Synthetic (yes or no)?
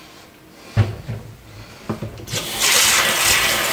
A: no